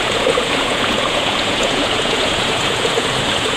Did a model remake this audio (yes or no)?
yes